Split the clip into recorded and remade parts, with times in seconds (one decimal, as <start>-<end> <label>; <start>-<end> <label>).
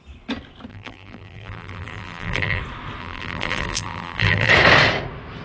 0.0-0.7 recorded; 0.7-2.6 remade; 2.6-3.0 recorded; 3.0-4.5 remade; 4.5-5.4 recorded